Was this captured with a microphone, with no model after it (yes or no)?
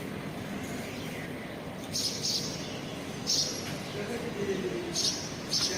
yes